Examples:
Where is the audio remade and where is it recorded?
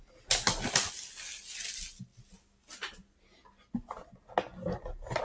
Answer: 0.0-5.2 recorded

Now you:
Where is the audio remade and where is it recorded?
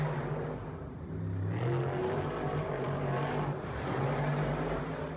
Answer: 0.0-2.0 recorded; 2.0-4.8 remade; 4.8-5.2 recorded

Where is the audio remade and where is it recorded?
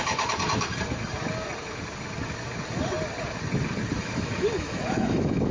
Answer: 0.0-0.7 remade; 0.7-4.0 recorded; 4.0-5.5 remade